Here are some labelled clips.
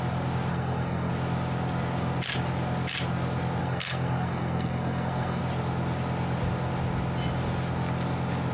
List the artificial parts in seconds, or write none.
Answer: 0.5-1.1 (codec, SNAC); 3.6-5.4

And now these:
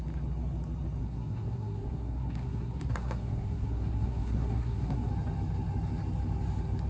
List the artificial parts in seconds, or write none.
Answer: 1.0-5.1 (codec, SNAC)

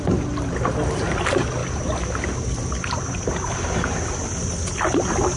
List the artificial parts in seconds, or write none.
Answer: none